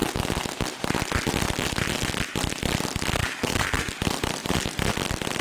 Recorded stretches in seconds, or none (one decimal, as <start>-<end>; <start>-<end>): 0.0-3.2; 3.9-5.4